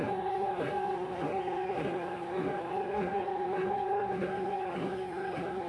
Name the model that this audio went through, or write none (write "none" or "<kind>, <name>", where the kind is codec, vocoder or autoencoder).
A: codec, SNAC